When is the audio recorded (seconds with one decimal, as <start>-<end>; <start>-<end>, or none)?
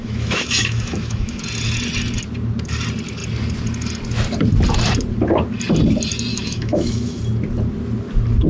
1.4-6.3; 7.2-8.5